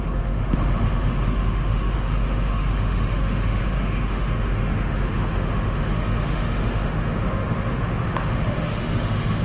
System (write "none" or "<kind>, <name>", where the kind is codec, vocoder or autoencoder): autoencoder, DAC-VAE